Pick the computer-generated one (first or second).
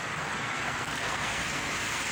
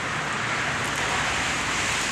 first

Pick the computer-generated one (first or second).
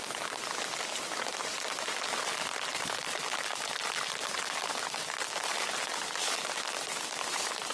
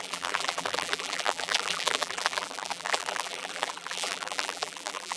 second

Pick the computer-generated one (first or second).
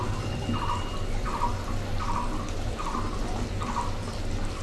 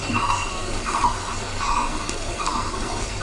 second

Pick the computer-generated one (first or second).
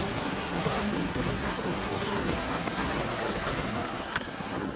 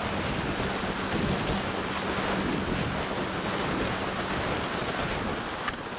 first